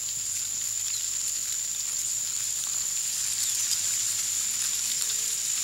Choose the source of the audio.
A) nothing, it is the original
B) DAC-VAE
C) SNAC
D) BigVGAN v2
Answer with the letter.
A